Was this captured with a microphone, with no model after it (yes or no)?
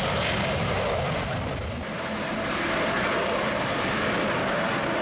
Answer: yes